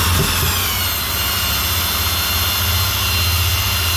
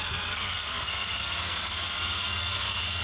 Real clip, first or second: first